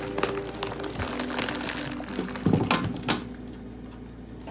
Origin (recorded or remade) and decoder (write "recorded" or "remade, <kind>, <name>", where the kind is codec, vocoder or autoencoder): recorded